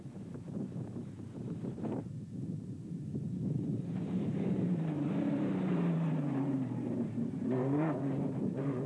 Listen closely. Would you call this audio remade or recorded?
remade